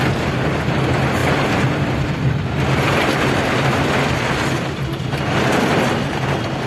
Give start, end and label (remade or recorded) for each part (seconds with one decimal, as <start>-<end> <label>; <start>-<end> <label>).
0.0-6.7 recorded